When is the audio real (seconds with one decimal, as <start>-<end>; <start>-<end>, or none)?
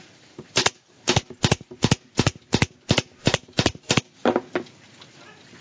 0.0-5.6